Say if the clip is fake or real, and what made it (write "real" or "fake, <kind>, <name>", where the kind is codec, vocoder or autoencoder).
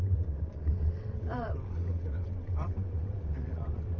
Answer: fake, vocoder, WaveNeXt